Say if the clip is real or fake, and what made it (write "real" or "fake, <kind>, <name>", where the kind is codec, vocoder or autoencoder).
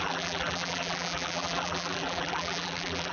fake, vocoder, BigVGAN v2